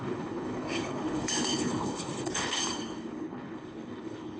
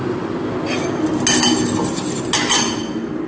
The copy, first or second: first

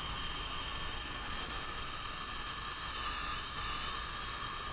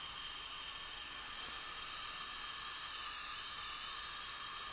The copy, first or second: second